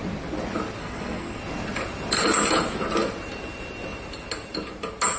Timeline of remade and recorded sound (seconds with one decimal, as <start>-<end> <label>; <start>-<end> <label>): 0.0-0.8 recorded; 0.8-1.4 remade; 1.4-5.2 recorded